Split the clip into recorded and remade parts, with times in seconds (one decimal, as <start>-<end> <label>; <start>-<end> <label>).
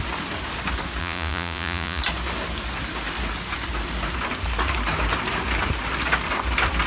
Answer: 0.0-1.0 recorded; 1.0-2.0 remade; 2.0-6.9 recorded